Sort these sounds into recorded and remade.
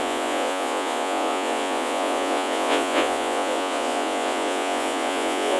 remade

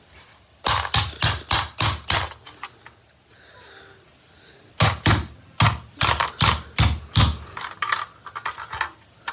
recorded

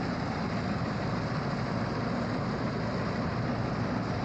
recorded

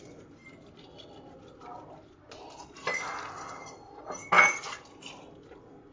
recorded